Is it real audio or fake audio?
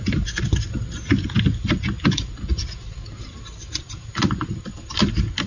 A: real